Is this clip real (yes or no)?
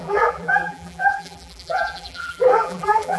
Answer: no